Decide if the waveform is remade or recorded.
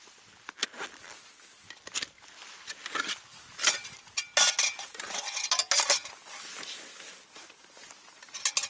recorded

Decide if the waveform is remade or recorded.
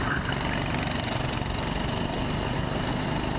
recorded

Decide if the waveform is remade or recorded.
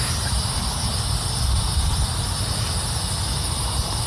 recorded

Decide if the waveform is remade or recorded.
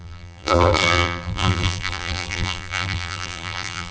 remade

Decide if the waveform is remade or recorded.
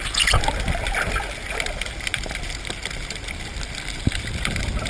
recorded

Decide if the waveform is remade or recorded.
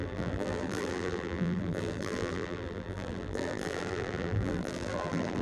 remade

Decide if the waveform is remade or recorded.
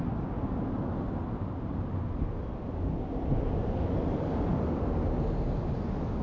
recorded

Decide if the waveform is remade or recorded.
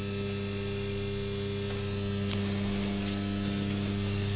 recorded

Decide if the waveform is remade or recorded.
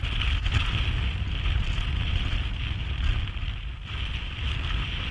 recorded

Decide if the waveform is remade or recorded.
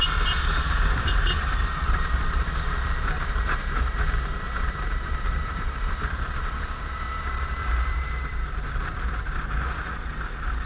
remade